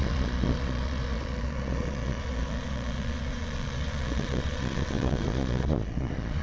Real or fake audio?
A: fake